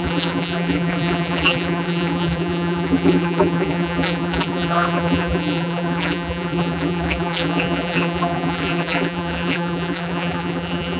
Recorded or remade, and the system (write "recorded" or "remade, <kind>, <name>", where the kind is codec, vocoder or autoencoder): remade, vocoder, BigVGAN v2